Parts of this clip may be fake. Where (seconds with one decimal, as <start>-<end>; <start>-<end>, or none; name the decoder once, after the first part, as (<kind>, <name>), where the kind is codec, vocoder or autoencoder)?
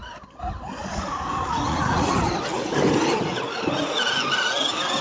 0.8-2.1 (vocoder, Vocos)